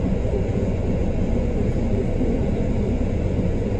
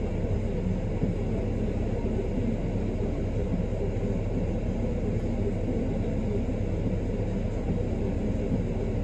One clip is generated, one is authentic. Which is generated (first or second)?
first